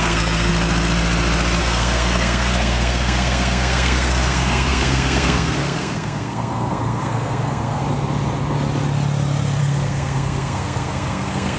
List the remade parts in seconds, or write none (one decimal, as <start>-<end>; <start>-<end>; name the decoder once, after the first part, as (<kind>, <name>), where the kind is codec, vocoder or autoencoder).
0.0-0.5 (codec, SNAC); 1.6-7.8; 9.6-11.6